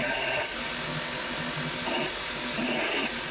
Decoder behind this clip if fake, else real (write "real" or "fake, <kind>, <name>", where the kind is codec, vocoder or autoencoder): real